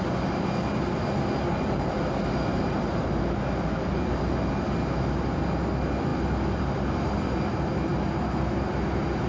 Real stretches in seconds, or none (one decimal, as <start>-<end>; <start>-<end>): 0.0-2.5; 4.5-9.3